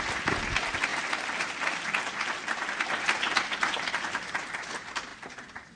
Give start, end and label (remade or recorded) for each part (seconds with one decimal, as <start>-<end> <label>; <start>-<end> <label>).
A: 0.0-5.8 recorded